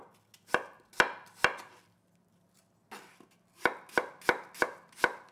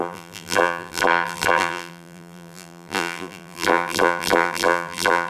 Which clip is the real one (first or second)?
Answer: first